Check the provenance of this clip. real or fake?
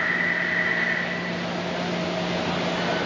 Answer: real